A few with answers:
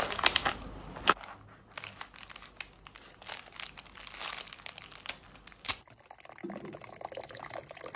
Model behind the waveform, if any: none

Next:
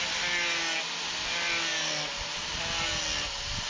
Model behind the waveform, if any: none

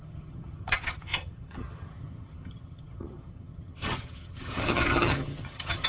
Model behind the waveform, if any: vocoder, HiFi-GAN